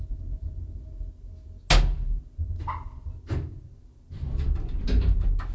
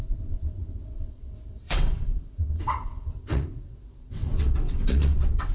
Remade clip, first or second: second